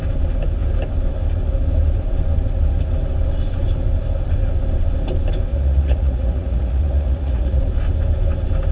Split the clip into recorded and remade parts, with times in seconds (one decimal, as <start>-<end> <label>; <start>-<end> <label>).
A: 0.0-5.5 recorded; 5.5-7.6 remade; 7.6-8.7 recorded